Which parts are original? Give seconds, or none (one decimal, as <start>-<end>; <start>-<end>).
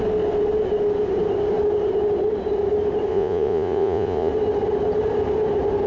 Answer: 0.0-3.1; 4.3-5.9